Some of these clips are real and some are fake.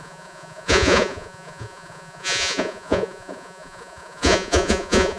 fake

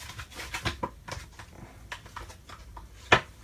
real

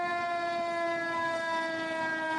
real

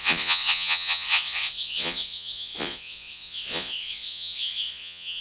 fake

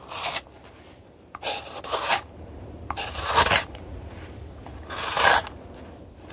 real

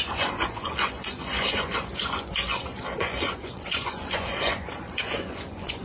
fake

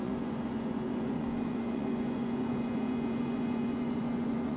fake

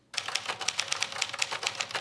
real